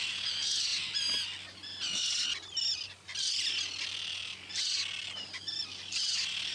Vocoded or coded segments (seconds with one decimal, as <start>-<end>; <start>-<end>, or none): none